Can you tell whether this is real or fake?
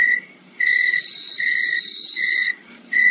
fake